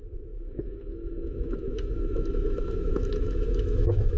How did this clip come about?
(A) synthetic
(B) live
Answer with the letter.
A